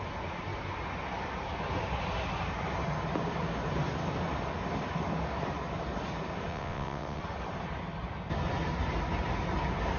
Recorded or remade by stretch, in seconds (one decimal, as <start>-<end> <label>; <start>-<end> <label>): 0.0-6.5 recorded; 6.5-7.2 remade; 7.2-10.0 recorded

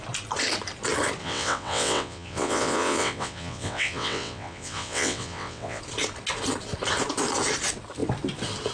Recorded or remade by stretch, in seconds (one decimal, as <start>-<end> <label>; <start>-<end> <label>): 0.0-1.2 recorded; 1.2-5.8 remade; 5.8-8.7 recorded